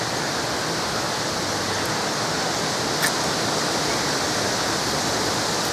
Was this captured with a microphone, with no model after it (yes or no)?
yes